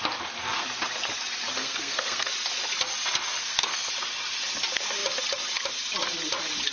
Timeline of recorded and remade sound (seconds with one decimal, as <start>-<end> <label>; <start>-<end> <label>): 0.0-1.6 recorded; 1.6-2.3 remade; 2.3-3.4 recorded; 3.4-3.9 remade; 3.9-6.7 recorded